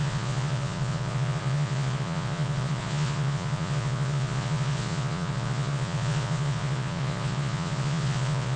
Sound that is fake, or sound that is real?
fake